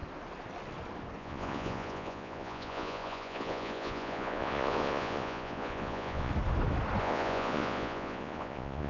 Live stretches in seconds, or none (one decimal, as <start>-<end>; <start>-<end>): 0.0-1.2; 6.3-7.0